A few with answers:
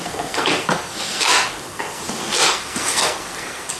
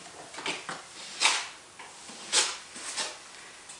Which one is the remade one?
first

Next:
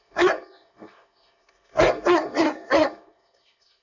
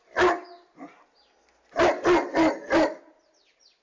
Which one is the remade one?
first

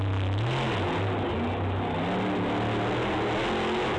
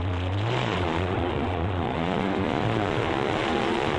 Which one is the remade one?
second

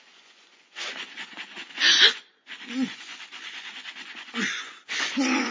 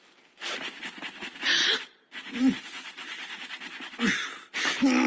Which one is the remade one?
first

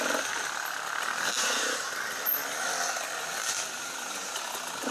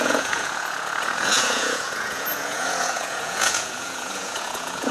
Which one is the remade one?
second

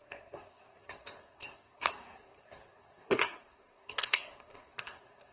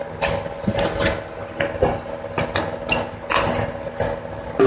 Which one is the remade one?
first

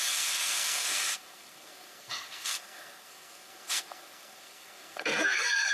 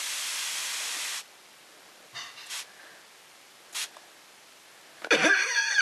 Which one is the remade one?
first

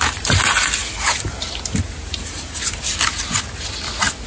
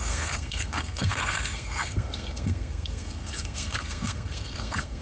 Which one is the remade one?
second